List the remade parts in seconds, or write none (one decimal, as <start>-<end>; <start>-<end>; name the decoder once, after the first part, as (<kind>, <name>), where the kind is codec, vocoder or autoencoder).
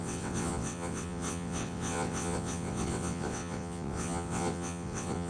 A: 0.0-5.3 (vocoder, WaveNeXt)